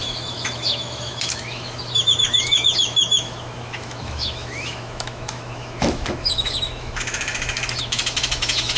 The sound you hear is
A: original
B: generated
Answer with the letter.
B